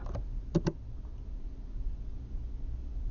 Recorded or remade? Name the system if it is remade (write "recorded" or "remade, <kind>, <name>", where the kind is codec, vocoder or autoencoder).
recorded